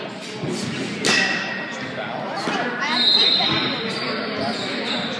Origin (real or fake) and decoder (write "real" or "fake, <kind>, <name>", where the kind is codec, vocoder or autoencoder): real